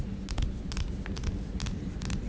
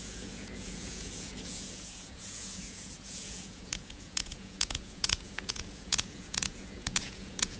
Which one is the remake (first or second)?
second